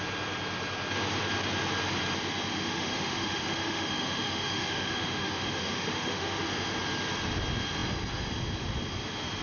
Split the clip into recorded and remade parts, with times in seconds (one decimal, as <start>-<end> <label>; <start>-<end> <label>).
0.0-2.5 recorded; 2.5-6.4 remade; 6.4-9.4 recorded